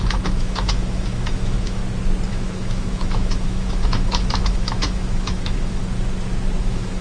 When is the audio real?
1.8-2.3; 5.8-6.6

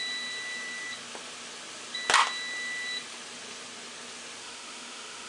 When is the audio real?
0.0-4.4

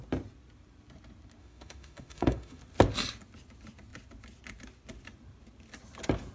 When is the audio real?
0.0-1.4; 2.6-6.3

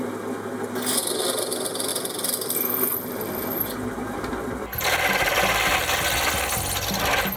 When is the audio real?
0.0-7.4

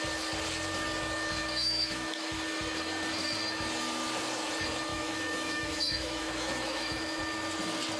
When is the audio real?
0.0-1.4; 2.3-4.9; 7.2-8.0

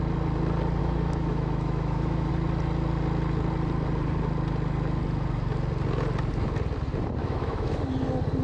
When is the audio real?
0.0-0.8; 2.3-7.2; 7.8-8.4

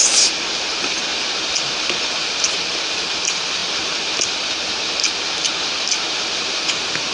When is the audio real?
0.0-7.1

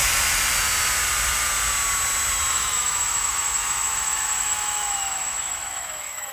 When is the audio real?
0.0-2.5